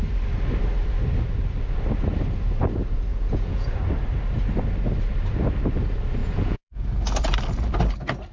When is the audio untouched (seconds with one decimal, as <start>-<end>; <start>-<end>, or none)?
0.0-3.1; 3.8-6.2; 7.0-8.3